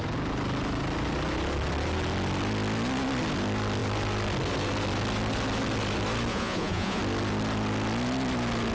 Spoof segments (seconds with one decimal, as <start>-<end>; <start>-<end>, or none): 6.3-7.0